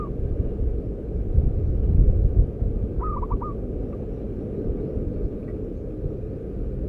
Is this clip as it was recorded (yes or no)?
yes